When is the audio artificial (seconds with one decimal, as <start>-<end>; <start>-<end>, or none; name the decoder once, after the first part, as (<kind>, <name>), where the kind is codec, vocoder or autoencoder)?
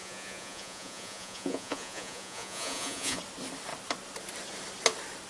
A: 0.0-3.2 (vocoder, Vocos)